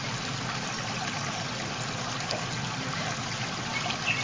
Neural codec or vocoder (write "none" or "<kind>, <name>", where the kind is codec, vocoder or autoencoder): none